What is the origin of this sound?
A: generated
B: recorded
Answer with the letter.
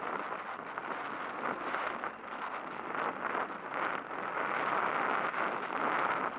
B